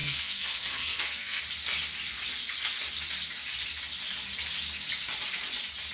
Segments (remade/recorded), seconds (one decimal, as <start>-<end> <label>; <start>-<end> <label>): 0.0-1.4 remade; 1.4-5.9 recorded